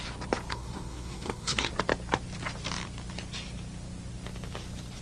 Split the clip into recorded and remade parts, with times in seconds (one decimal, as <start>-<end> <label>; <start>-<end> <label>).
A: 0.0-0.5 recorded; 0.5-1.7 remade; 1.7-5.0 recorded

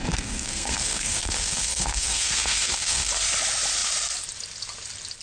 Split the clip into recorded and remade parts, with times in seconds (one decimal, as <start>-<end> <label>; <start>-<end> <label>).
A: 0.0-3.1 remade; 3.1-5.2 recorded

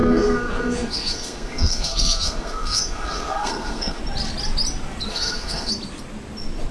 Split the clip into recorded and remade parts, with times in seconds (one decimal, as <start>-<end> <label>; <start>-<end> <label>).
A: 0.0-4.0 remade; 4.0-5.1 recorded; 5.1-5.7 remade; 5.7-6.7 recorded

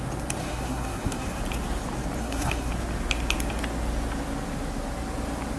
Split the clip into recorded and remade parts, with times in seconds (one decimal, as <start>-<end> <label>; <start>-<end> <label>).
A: 0.0-0.4 recorded; 0.4-1.4 remade; 1.4-2.2 recorded; 2.2-2.7 remade; 2.7-5.6 recorded